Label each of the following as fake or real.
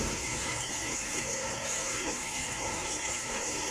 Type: fake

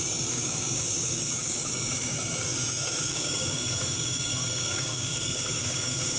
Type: fake